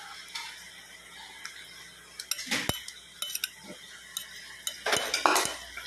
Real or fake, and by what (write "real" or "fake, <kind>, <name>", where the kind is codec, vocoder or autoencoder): real